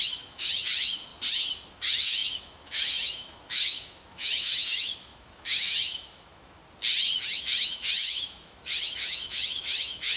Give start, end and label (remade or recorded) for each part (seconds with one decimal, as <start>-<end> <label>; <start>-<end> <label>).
0.0-1.1 remade; 1.1-1.7 recorded; 1.7-6.6 remade; 6.6-7.4 recorded; 7.4-10.2 remade